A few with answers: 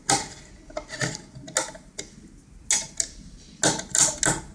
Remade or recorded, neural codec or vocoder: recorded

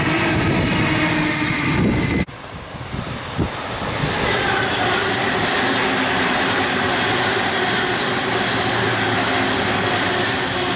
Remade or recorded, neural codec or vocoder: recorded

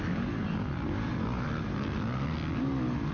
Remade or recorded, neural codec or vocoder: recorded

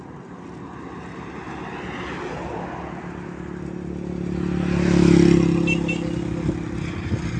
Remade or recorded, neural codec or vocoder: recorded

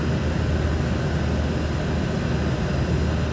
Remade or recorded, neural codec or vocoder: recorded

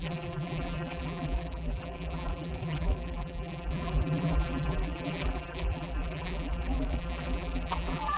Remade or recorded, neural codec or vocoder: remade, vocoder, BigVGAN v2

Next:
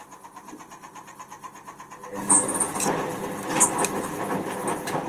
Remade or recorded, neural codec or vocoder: recorded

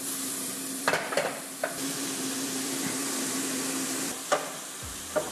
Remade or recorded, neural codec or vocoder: remade, vocoder, BigVGAN v2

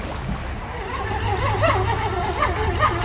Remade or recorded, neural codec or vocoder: recorded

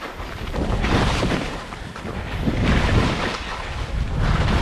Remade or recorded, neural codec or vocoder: recorded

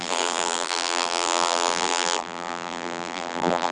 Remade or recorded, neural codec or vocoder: remade, vocoder, BigVGAN v2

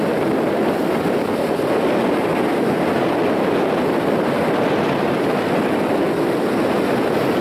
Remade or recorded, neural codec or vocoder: recorded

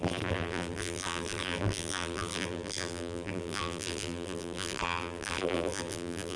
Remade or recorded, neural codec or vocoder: remade, vocoder, BigVGAN v2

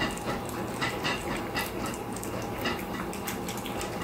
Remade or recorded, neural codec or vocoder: recorded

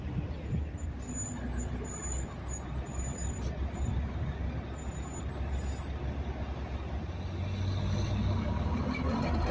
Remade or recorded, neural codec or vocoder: recorded